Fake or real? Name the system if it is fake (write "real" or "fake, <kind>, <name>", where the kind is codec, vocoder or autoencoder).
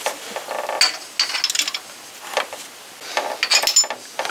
real